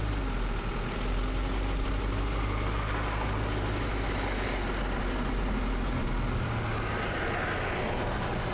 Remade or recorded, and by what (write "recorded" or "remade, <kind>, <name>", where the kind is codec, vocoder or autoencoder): recorded